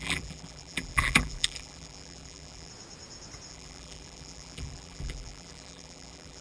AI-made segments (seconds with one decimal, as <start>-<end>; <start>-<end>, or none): 0.0-2.7; 3.5-6.4